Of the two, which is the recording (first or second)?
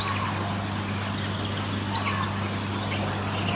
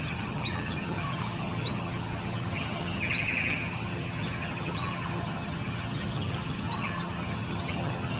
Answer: first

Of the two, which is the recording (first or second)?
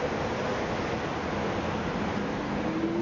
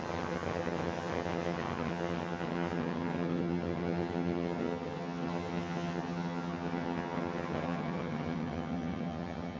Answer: first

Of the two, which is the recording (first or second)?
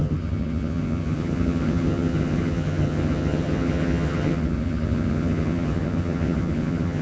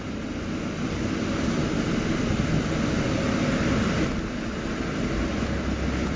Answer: second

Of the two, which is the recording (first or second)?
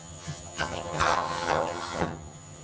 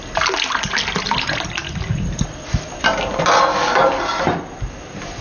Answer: second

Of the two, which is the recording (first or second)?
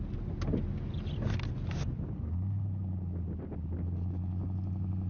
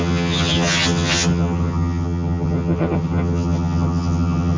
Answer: first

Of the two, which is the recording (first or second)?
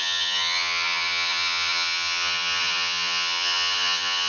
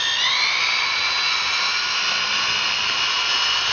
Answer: second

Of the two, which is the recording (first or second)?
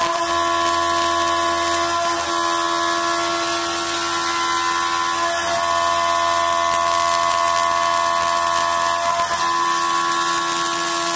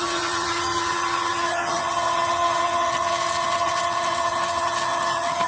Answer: first